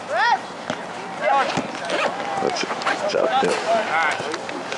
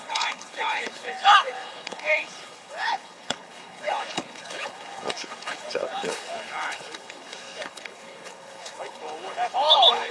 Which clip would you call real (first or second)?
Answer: first